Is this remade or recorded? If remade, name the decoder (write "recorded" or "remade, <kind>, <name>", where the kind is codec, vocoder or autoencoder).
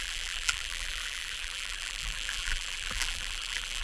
remade, vocoder, BigVGAN v2